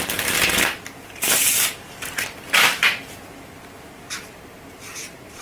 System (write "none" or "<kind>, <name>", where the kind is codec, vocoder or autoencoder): vocoder, BigVGAN v2